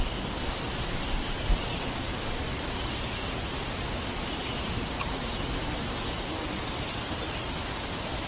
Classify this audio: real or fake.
real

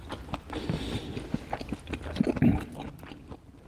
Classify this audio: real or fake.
real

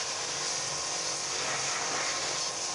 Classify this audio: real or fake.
real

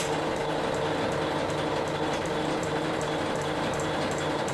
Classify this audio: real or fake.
real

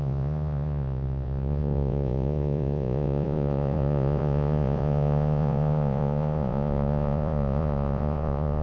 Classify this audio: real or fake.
fake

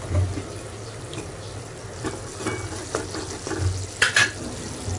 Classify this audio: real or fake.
real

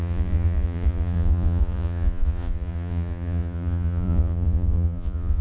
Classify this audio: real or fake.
fake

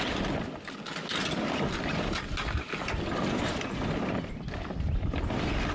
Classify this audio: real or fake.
real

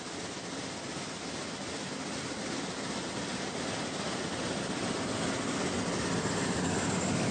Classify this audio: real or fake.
real